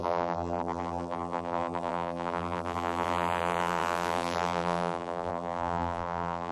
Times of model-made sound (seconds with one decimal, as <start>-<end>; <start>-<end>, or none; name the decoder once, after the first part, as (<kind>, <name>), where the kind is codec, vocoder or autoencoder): 0.0-6.5 (vocoder, BigVGAN v2)